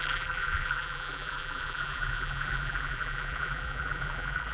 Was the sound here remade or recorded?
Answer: remade